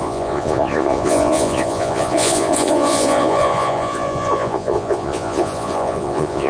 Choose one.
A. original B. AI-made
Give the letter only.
B